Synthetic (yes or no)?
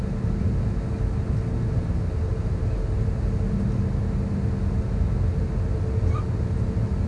no